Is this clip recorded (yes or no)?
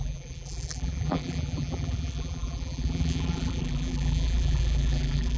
no